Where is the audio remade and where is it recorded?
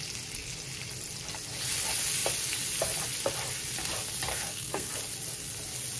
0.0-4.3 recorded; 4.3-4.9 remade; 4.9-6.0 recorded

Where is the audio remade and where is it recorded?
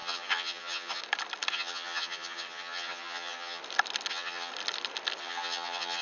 0.0-1.0 remade; 1.0-1.5 recorded; 1.5-3.6 remade; 3.6-4.1 recorded; 4.1-4.5 remade; 4.5-5.2 recorded; 5.2-6.0 remade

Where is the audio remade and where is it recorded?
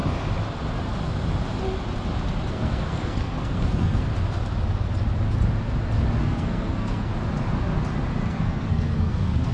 0.0-2.5 recorded; 2.5-4.1 remade; 4.1-6.2 recorded; 6.2-7.1 remade; 7.1-8.3 recorded; 8.3-9.5 remade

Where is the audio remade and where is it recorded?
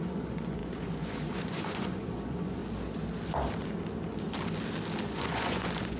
0.0-2.6 remade; 2.6-5.1 recorded; 5.1-6.0 remade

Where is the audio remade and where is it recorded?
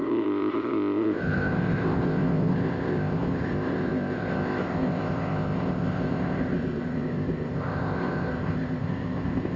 0.0-9.6 remade